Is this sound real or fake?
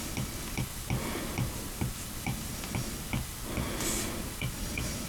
real